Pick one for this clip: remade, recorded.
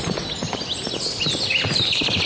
recorded